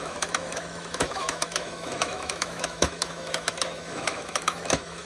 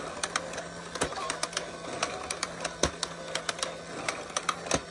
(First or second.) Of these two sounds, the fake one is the first